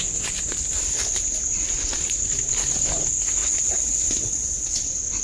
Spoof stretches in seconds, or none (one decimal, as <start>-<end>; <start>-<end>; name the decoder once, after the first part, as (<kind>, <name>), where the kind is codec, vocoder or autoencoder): 3.4-4.8 (vocoder, WaveNeXt)